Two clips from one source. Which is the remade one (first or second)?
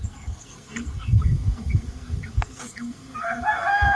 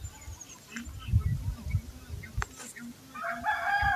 first